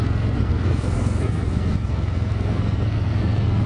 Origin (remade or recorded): remade